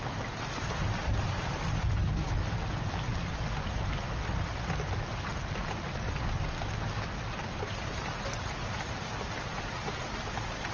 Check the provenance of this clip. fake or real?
real